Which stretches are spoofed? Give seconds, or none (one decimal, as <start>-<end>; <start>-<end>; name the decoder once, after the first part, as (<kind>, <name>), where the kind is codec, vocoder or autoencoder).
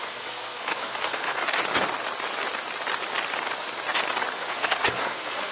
0.0-1.4 (codec, SNAC); 4.3-5.5